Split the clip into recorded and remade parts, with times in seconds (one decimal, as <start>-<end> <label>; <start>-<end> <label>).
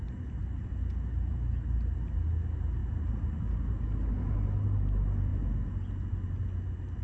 0.0-7.0 recorded